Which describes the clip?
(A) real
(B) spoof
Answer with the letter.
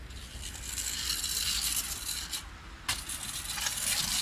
A